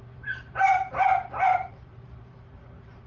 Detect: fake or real fake